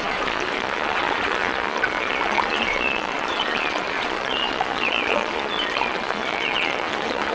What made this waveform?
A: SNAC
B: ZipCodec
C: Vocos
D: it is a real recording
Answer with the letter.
C